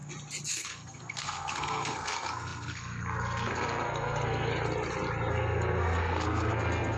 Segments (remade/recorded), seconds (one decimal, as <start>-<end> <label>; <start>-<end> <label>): 0.0-0.5 recorded; 0.5-4.5 remade; 4.5-5.3 recorded; 5.3-7.0 remade